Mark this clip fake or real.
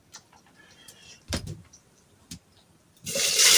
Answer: fake